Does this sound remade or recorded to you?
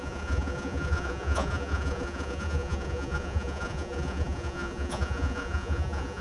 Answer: remade